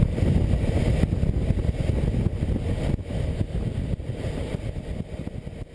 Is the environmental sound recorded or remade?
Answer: recorded